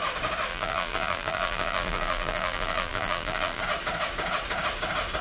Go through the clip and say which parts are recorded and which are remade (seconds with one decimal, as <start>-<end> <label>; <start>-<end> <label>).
0.0-0.5 recorded; 0.5-3.6 remade; 3.6-5.2 recorded